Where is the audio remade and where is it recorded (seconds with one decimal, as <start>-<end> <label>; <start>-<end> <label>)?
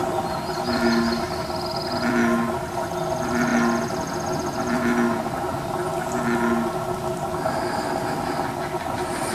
0.0-9.3 recorded